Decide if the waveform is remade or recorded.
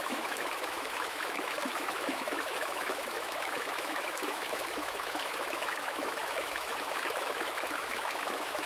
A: remade